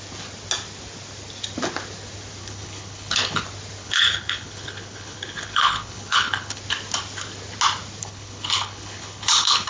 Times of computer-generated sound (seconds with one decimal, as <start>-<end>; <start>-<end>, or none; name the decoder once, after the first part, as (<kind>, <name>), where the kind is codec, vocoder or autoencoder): 2.4-3.4 (codec, HILCodec); 3.8-6.6; 8.0-9.7